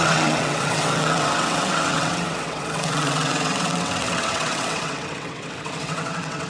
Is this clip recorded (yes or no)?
no